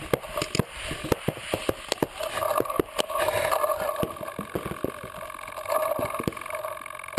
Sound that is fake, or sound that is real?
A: real